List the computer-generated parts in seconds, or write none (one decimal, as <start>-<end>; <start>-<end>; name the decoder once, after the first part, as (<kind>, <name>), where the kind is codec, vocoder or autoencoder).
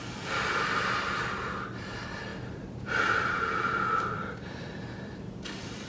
0.0-5.9 (vocoder, BigVGAN v2)